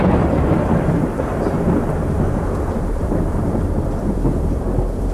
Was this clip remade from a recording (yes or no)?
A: yes